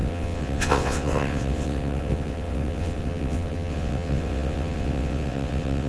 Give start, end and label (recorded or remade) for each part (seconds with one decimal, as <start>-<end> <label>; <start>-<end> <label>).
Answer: 0.0-5.9 remade